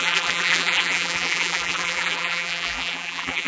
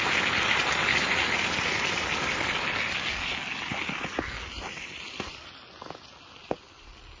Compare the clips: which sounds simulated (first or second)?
first